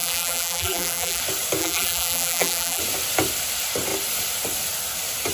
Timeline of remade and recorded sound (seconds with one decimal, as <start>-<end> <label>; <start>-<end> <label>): 0.0-1.2 remade; 1.2-1.6 recorded; 1.6-2.8 remade; 2.8-5.3 recorded